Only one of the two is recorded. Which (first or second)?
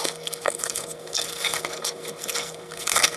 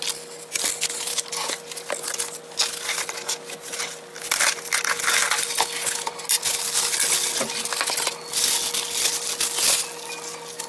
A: second